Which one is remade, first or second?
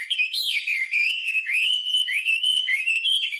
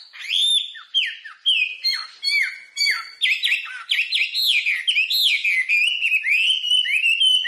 first